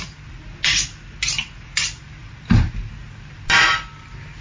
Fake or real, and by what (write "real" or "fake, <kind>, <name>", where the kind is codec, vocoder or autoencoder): real